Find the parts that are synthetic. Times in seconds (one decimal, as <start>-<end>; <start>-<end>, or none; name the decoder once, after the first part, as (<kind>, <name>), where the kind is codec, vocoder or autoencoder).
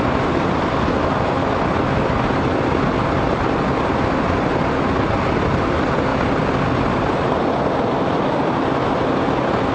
none